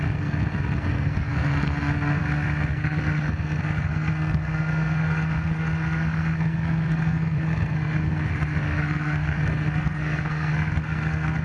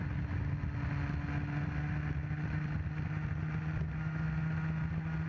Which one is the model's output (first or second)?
first